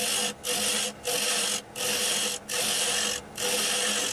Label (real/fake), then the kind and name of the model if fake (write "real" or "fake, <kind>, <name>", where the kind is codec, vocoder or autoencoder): real